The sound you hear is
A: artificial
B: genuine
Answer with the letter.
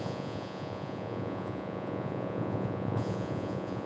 A